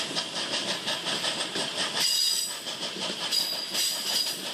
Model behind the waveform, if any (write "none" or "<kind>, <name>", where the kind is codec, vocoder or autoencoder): none